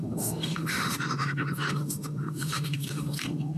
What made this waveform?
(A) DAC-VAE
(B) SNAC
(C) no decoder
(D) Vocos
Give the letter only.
A